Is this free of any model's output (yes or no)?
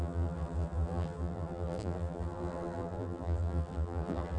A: no